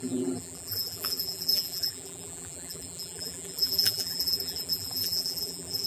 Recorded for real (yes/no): no